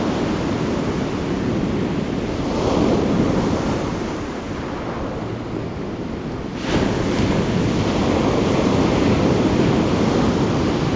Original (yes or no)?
yes